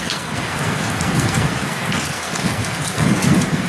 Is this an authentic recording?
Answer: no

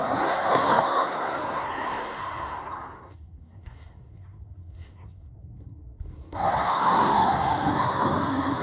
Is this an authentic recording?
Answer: no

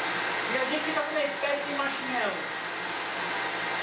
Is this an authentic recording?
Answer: yes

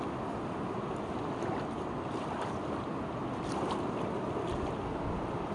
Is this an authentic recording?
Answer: yes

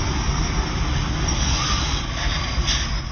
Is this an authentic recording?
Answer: yes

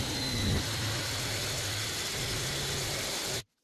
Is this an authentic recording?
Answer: yes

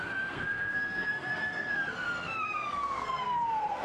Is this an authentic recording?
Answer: no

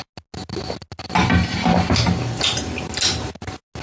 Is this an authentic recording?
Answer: yes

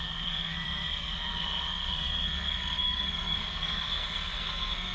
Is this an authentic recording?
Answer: no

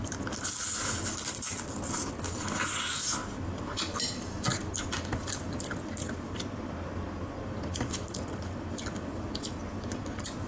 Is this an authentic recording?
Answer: yes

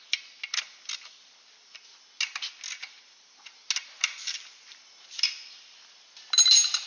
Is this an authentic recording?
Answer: yes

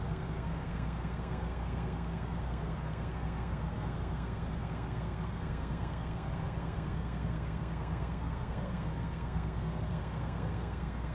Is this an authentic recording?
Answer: no